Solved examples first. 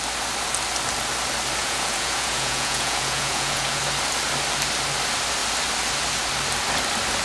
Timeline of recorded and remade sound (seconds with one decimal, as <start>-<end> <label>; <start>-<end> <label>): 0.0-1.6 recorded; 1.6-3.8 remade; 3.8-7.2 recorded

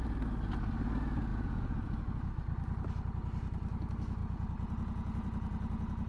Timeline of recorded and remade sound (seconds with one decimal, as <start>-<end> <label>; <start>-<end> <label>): 0.0-1.3 recorded; 1.3-2.3 remade; 2.3-4.2 recorded; 4.2-6.1 remade

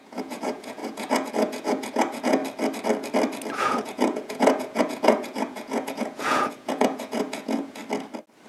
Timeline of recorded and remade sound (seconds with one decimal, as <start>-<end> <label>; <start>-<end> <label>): 0.0-2.4 remade; 2.4-3.5 recorded; 3.5-7.8 remade; 7.8-8.5 recorded